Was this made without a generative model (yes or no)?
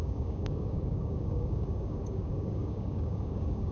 no